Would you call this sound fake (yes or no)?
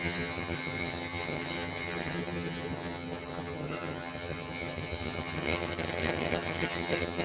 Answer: yes